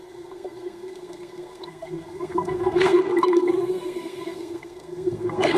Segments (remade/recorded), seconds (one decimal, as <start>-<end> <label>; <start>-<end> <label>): 0.0-5.6 remade